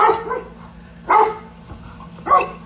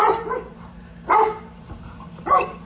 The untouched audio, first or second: first